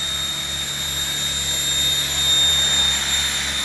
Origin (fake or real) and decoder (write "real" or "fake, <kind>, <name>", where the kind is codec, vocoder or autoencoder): real